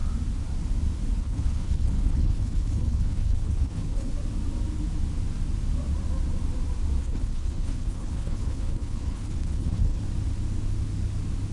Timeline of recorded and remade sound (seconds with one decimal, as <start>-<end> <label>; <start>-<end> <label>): 0.0-1.2 recorded; 1.2-4.1 remade; 4.1-7.0 recorded; 7.0-10.0 remade; 10.0-11.5 recorded